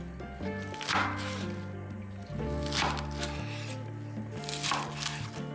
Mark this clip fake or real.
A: real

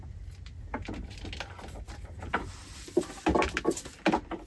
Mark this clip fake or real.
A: real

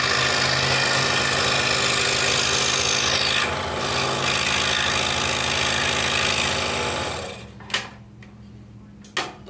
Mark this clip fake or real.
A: real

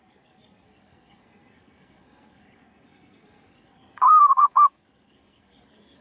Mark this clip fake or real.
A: fake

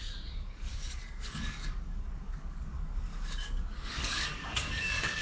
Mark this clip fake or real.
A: fake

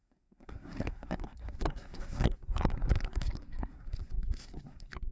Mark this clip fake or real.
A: fake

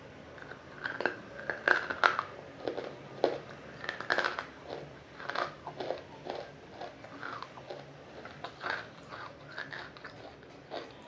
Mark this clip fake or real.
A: real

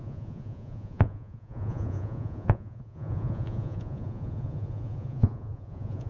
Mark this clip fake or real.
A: fake